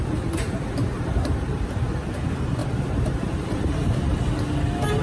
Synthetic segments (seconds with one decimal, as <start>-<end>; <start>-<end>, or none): 0.8-1.8; 2.6-4.3